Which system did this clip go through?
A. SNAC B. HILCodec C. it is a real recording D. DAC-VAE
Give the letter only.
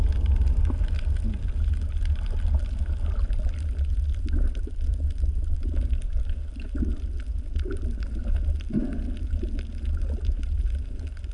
C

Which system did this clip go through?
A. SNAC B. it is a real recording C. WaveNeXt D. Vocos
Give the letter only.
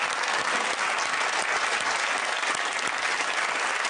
B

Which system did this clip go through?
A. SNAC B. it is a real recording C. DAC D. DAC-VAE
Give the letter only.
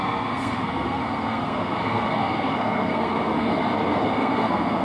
A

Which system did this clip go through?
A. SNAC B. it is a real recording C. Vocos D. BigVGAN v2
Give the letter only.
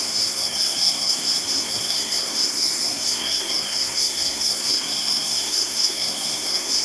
A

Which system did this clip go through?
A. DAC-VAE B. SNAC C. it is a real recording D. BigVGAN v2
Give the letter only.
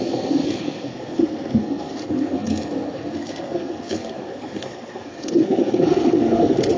B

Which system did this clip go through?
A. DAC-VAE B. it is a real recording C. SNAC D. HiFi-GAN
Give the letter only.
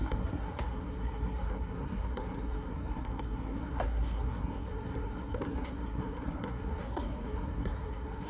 C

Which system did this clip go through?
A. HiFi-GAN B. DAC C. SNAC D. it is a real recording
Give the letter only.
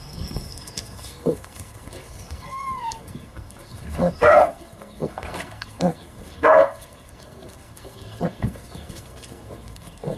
C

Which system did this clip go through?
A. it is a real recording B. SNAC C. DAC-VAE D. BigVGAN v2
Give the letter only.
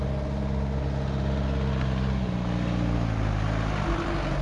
A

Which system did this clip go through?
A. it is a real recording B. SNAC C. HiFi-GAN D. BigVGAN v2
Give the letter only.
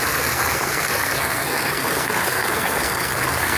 B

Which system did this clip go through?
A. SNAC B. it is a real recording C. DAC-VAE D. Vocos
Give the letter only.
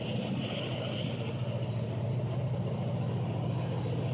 B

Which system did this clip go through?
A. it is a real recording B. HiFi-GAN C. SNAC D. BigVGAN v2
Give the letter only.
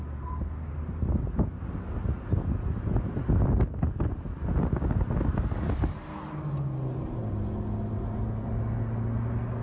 A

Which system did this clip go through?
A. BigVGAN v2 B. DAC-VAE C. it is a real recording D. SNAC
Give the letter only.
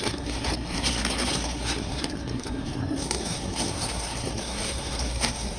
D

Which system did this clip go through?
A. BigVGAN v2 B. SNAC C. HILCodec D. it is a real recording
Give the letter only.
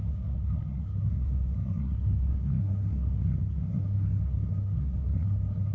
B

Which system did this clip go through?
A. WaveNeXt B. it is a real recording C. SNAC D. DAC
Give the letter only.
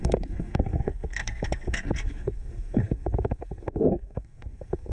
C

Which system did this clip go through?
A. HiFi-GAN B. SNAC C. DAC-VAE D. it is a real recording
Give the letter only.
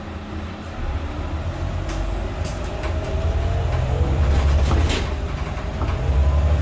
D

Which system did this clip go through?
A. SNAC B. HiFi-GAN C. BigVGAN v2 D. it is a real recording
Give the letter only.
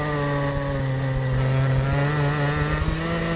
D